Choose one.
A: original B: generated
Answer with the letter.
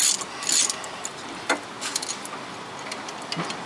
A